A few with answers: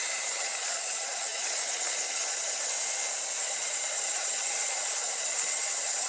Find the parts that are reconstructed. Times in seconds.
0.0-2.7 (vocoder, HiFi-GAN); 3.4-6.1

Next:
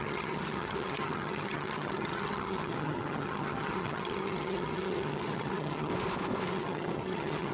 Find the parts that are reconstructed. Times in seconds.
0.0-5.9 (vocoder, HiFi-GAN); 6.5-7.5

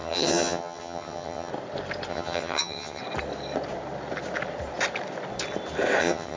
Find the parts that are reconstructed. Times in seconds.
0.0-1.5 (vocoder, HiFi-GAN); 2.1-3.0; 6.0-6.4

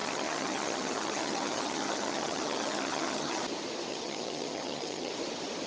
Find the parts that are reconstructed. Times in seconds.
0.0-3.4 (vocoder, HiFi-GAN); 3.9-5.1

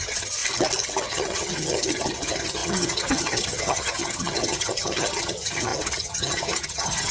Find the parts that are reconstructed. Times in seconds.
0.0-0.4 (vocoder, HiFi-GAN); 1.0-7.1